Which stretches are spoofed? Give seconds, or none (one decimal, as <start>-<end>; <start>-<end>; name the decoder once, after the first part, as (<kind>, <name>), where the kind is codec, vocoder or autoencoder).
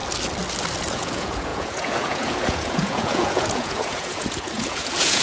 0.9-5.2 (vocoder, Vocos)